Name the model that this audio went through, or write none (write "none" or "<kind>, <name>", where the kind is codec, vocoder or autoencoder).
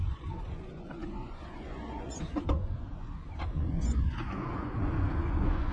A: vocoder, Vocos